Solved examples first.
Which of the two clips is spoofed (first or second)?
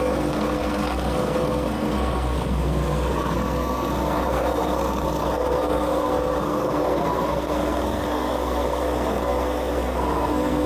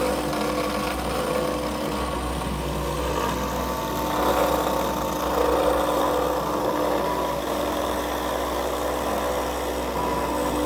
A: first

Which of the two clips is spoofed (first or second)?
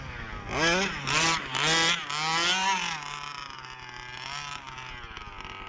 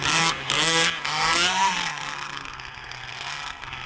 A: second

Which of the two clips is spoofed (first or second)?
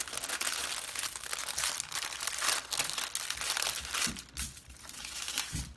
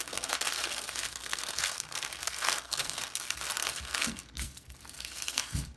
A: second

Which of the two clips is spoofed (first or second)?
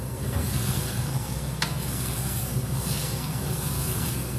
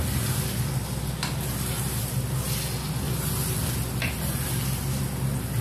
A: first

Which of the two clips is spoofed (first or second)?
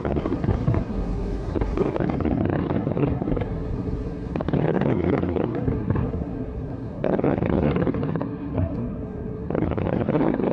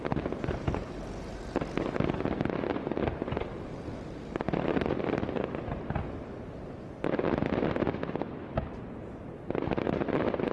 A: first